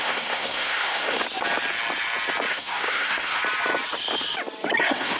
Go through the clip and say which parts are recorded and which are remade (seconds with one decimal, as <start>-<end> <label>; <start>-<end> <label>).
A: 0.0-1.2 remade; 1.2-2.5 recorded; 2.5-3.4 remade; 3.4-4.8 recorded; 4.8-5.2 remade

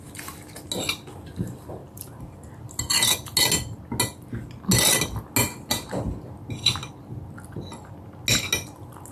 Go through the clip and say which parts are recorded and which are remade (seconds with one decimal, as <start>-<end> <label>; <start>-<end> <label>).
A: 0.0-1.8 recorded; 1.8-2.5 remade; 2.5-9.1 recorded